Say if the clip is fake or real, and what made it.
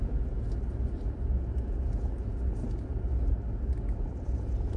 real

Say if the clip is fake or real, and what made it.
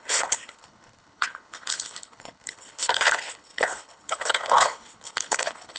fake, codec, HILCodec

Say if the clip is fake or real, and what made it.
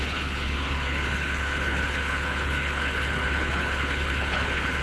fake, codec, HILCodec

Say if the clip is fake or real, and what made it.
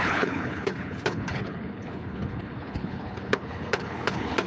fake, codec, HILCodec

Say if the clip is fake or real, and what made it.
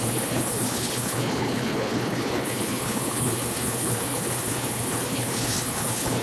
fake, codec, HILCodec